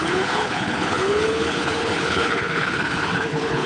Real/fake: fake